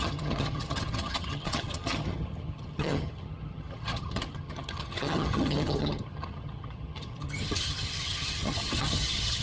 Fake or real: fake